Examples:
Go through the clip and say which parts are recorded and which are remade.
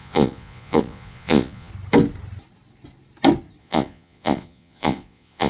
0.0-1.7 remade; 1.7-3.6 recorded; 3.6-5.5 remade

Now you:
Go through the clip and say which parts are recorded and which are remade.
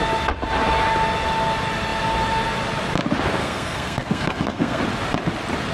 0.0-3.4 recorded; 3.4-4.8 remade; 4.8-5.7 recorded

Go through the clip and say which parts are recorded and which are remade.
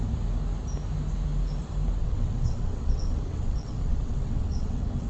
0.0-2.0 recorded; 2.0-5.1 remade